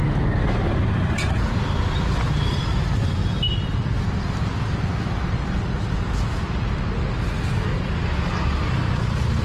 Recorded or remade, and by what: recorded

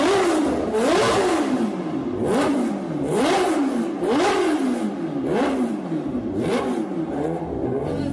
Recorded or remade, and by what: recorded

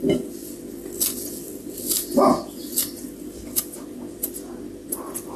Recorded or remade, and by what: recorded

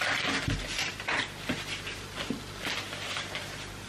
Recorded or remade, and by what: recorded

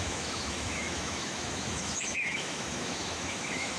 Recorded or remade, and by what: remade, autoencoder, DAC-VAE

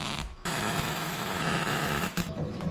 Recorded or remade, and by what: remade, autoencoder, DAC-VAE